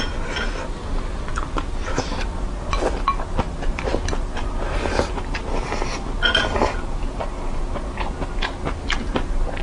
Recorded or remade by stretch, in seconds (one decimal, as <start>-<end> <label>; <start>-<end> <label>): 0.0-9.6 recorded